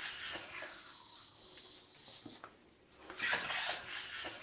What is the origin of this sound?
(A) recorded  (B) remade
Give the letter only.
A